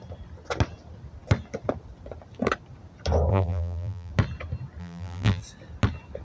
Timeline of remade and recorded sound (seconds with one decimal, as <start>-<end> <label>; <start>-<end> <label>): 0.0-3.3 recorded; 3.3-4.1 remade; 4.1-4.8 recorded; 4.8-5.4 remade; 5.4-6.2 recorded